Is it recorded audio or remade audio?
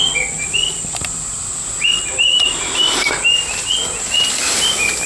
recorded